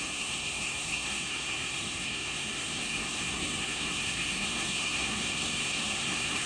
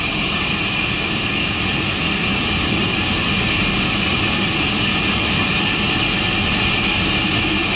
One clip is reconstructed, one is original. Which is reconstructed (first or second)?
first